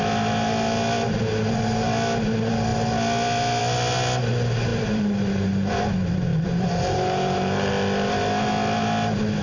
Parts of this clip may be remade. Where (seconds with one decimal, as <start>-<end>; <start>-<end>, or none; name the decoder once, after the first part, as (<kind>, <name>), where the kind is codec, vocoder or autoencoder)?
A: 4.7-5.7 (vocoder, BigVGAN v2); 6.3-7.7